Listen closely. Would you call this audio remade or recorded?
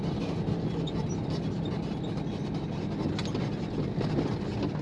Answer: recorded